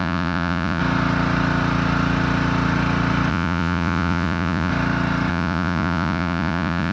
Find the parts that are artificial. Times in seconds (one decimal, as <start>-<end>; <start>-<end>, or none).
0.0-0.8; 3.3-4.7; 5.3-6.9